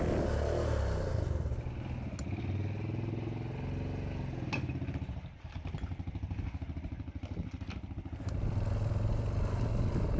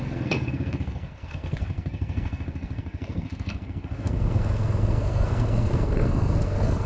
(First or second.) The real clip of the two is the first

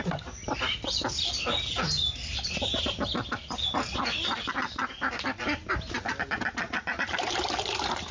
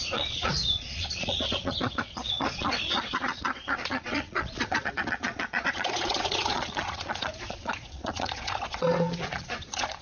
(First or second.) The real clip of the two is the first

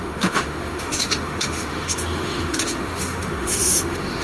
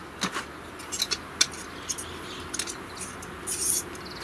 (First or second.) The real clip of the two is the second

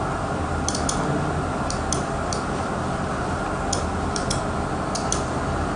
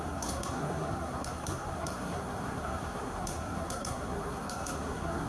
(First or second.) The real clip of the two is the first